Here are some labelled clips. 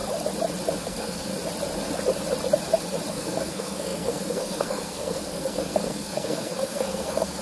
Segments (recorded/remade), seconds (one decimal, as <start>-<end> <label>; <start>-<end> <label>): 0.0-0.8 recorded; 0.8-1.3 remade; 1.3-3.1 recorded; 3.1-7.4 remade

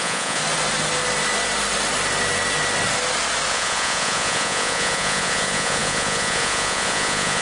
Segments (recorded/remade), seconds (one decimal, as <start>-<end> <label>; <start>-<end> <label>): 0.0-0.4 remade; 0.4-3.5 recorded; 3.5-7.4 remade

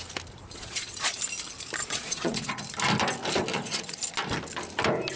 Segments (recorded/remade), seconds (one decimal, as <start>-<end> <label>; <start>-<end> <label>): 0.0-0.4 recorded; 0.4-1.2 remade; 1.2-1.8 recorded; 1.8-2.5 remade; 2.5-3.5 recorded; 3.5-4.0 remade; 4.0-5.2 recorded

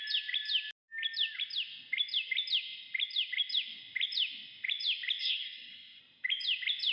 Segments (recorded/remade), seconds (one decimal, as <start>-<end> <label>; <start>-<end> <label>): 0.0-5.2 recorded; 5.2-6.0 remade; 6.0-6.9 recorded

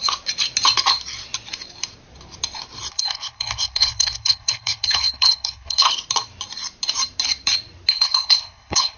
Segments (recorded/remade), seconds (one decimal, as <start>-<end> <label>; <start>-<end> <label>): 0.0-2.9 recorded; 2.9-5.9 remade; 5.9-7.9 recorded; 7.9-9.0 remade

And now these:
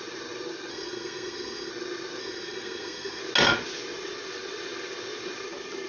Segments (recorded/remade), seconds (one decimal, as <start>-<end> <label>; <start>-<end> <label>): 0.0-0.7 recorded; 0.7-1.7 remade; 1.7-2.2 recorded; 2.2-3.2 remade; 3.2-5.9 recorded

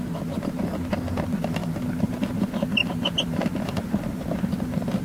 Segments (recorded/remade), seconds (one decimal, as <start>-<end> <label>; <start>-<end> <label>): 0.0-5.0 recorded